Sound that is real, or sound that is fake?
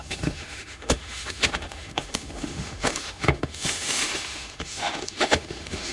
fake